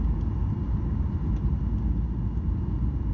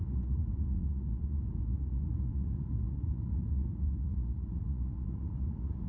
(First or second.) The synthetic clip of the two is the second